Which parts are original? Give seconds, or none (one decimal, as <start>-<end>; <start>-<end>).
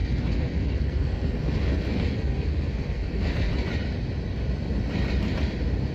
3.5-5.9